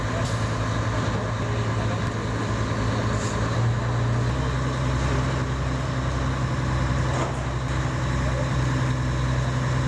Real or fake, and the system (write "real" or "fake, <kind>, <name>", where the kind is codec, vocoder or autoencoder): real